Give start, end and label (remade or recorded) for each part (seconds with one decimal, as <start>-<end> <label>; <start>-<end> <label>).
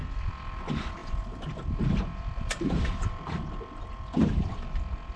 0.0-1.0 recorded; 1.0-3.1 remade; 3.1-5.2 recorded